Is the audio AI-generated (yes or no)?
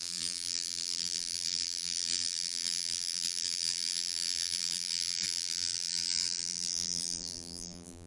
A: yes